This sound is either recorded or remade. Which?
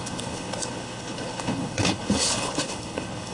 remade